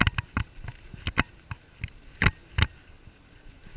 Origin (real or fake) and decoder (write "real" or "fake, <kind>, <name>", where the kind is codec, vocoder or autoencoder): real